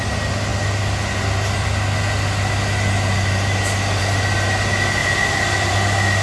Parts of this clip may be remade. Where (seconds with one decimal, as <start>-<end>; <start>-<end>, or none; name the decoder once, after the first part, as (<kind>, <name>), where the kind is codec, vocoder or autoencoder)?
none